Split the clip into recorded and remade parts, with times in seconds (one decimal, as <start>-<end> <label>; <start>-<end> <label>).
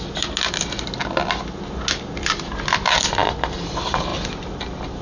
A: 0.0-5.0 recorded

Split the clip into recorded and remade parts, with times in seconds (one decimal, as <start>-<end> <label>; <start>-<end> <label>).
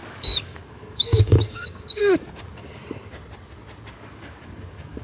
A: 0.0-2.8 remade; 2.8-3.9 recorded; 3.9-5.0 remade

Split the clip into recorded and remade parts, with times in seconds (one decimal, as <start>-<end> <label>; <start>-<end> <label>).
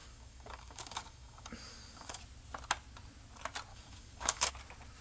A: 0.0-2.2 remade; 2.2-3.7 recorded; 3.7-4.5 remade; 4.5-5.0 recorded